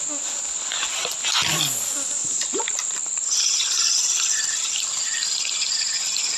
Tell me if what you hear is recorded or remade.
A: recorded